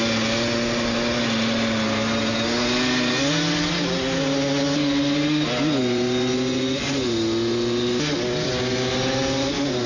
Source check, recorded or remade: recorded